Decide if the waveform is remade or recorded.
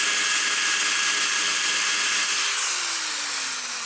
recorded